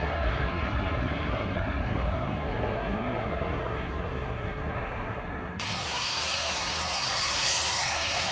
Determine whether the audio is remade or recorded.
remade